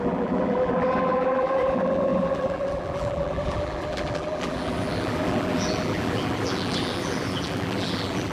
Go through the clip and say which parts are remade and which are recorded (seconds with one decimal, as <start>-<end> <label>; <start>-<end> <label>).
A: 0.0-8.3 remade

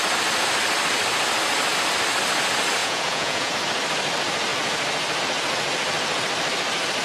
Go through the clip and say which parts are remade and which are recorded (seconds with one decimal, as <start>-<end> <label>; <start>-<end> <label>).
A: 0.0-2.8 recorded; 2.8-3.5 remade; 3.5-7.0 recorded